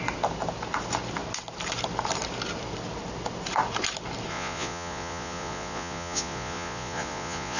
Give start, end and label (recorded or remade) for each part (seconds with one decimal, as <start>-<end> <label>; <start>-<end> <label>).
0.0-4.3 recorded; 4.3-7.6 remade